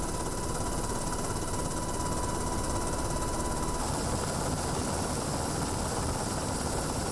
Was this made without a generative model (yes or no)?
yes